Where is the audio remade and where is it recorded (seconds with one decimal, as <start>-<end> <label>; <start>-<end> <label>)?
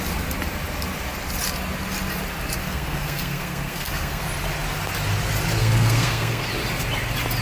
0.0-2.6 recorded; 2.6-4.3 remade; 4.3-5.6 recorded; 5.6-6.5 remade; 6.5-7.4 recorded